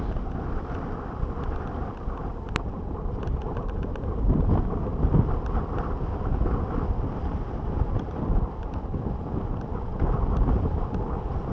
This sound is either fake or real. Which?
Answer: real